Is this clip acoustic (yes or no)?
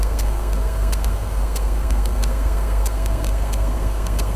no